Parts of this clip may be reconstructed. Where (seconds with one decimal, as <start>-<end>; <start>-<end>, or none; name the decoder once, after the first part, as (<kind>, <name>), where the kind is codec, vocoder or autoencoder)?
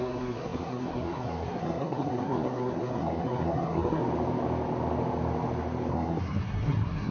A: 0.0-4.0 (codec, SNAC); 5.9-7.1